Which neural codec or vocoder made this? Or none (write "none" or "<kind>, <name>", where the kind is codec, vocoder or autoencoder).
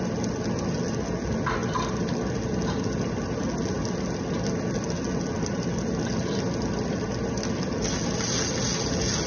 none